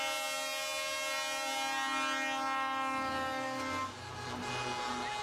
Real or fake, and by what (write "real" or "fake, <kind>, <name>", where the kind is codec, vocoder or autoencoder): real